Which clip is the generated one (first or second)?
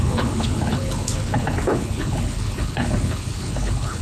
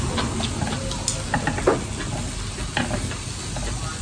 first